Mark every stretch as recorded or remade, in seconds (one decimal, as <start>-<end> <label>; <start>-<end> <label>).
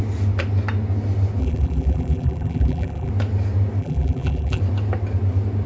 0.0-1.4 recorded; 1.4-3.1 remade; 3.1-3.8 recorded; 3.8-4.6 remade; 4.6-5.7 recorded